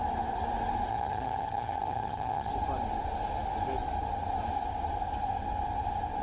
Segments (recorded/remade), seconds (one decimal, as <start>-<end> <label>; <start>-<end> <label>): 0.0-0.9 recorded; 0.9-2.5 remade; 2.5-6.2 recorded